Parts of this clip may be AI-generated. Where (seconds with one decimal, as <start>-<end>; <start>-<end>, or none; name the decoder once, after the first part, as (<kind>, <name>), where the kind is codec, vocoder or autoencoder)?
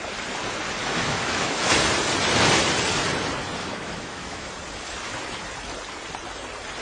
0.8-1.7 (autoencoder, DAC-VAE); 3.6-4.5